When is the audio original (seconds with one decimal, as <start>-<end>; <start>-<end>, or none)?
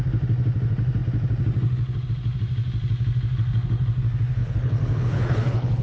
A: 0.0-4.4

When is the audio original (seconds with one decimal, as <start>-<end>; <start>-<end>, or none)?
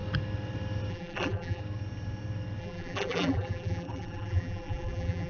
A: 0.0-0.9; 1.6-2.6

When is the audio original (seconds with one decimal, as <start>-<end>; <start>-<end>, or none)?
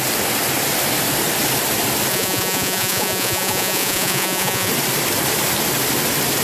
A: 0.0-2.1; 4.7-6.4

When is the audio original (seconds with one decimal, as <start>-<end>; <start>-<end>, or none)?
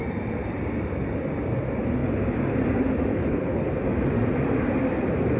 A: 0.0-3.1; 3.8-5.4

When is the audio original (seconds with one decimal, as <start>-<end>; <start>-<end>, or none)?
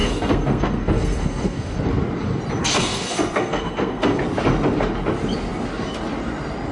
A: 1.9-2.6; 4.2-6.7